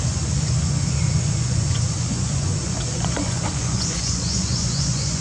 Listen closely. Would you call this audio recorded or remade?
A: remade